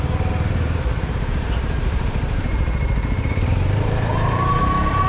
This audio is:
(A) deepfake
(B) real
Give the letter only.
A